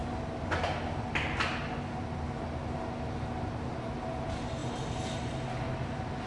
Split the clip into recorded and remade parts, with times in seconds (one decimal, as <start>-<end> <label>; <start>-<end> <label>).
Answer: 0.0-6.3 recorded